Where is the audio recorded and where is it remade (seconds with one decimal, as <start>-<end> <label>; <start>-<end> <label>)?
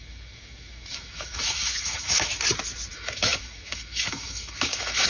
0.0-2.3 remade; 2.3-2.9 recorded; 2.9-5.1 remade